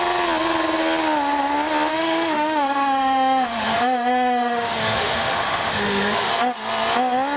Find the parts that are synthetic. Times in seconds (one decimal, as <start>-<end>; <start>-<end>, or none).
1.9-6.3